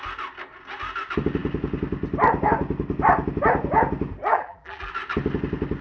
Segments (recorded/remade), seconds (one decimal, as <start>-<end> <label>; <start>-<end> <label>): 0.0-4.3 recorded; 4.3-4.9 remade; 4.9-5.8 recorded